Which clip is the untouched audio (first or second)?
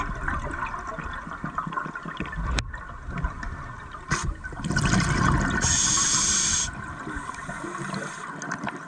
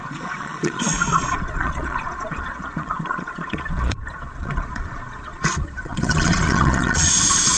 first